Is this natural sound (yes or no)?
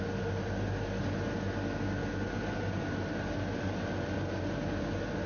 yes